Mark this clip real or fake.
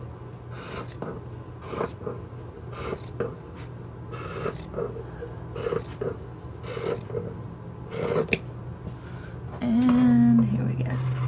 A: real